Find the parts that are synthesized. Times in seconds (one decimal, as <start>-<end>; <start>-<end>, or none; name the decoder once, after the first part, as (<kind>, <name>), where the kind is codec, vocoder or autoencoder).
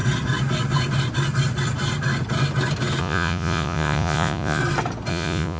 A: 3.0-4.6 (vocoder, Vocos); 5.1-5.6